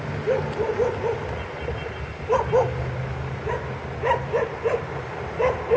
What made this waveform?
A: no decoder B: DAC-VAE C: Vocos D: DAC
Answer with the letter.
A